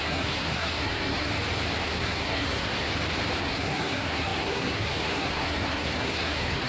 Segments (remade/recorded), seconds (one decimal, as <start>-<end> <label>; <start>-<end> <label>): 0.0-1.3 remade; 1.3-1.8 recorded; 1.8-2.9 remade; 2.9-3.4 recorded; 3.4-6.7 remade